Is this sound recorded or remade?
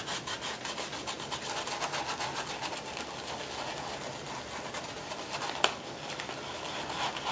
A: recorded